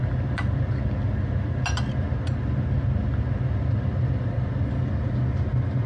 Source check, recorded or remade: recorded